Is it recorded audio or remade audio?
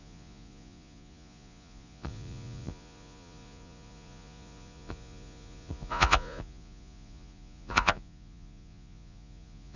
remade